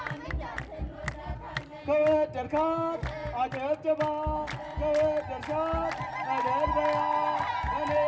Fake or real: real